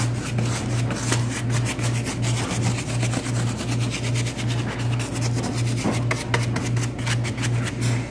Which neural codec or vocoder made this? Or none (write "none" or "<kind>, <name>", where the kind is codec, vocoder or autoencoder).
none